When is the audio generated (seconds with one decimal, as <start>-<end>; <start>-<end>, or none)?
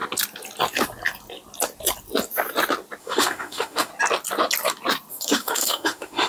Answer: 3.0-3.9; 5.1-6.3